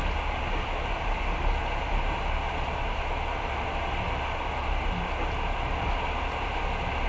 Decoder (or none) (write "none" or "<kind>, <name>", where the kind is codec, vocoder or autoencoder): none